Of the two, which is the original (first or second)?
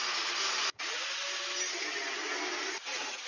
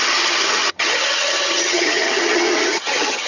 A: first